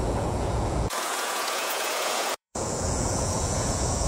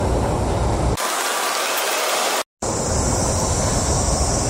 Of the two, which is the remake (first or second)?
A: first